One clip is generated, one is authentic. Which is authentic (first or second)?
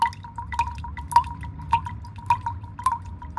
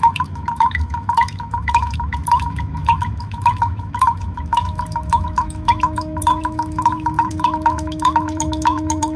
first